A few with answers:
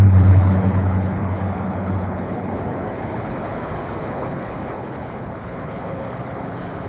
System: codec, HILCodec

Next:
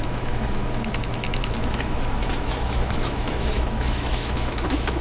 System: autoencoder, DAC-VAE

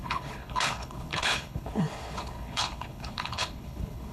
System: codec, HILCodec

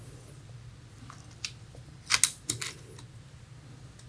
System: none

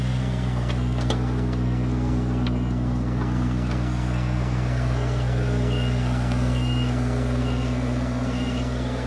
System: codec, SNAC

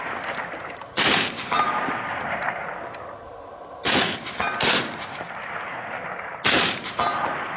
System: none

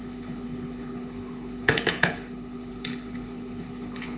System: codec, HILCodec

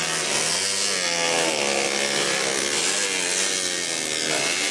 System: none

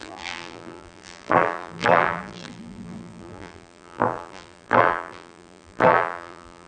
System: vocoder, BigVGAN v2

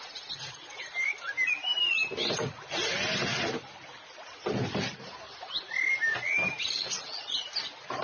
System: none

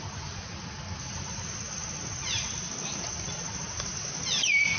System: none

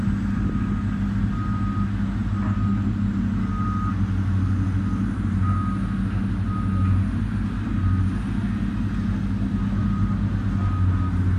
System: none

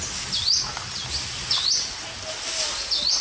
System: none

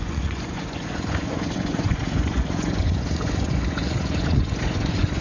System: vocoder, Vocos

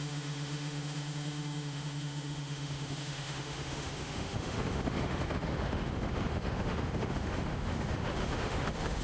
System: autoencoder, DAC-VAE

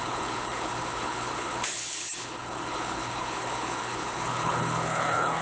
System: codec, HILCodec